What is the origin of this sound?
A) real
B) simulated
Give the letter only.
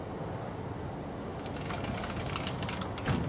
A